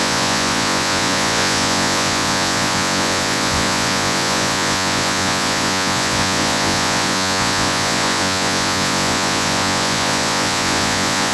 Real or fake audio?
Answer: fake